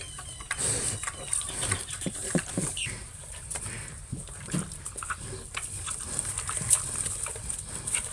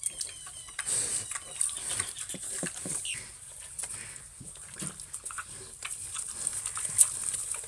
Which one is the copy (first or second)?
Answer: first